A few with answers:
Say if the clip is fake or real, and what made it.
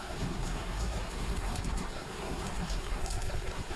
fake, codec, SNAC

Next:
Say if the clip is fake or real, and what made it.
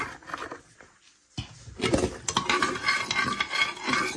real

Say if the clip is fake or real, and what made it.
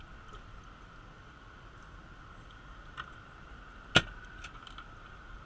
real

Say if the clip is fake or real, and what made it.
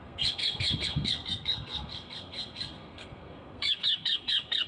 fake, codec, SNAC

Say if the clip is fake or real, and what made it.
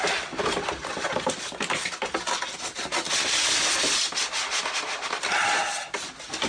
real